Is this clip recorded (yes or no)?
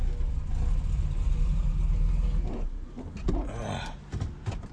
yes